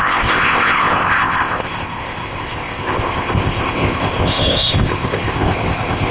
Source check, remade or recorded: remade